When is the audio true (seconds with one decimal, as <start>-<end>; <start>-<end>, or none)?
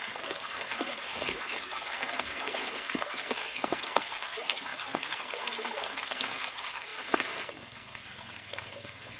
none